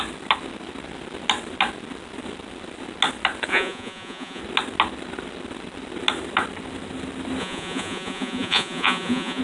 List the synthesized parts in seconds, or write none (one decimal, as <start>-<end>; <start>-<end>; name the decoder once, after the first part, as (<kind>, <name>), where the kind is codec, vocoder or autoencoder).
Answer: 3.5-4.4 (vocoder, Vocos); 7.4-9.4